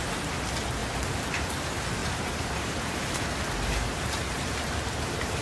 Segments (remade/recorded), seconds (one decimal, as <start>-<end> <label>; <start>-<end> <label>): 0.0-2.0 recorded; 2.0-5.4 remade